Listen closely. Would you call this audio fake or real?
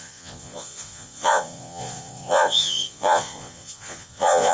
fake